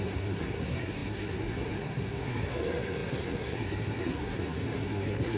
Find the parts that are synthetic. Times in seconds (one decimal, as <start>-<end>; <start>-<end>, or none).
0.0-5.4